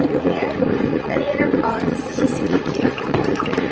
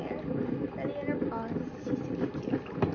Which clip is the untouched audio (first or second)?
second